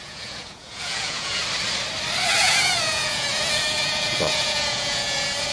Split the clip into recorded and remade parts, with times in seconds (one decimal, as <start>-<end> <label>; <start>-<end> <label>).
0.0-1.4 remade; 1.4-2.4 recorded; 2.4-5.5 remade